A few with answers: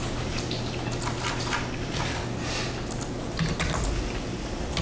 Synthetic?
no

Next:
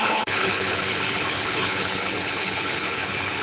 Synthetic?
yes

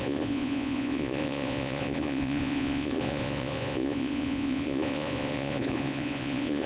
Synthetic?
yes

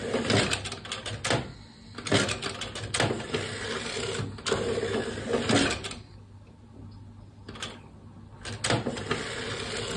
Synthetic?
no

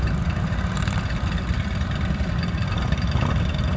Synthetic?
yes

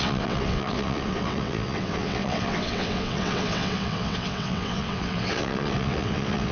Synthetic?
yes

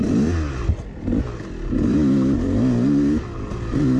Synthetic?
no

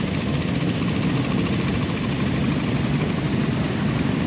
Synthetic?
no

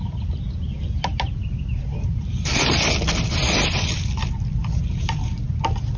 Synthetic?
no